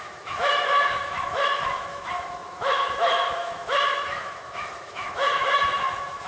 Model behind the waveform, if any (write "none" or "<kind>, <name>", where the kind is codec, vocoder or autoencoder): autoencoder, DAC-VAE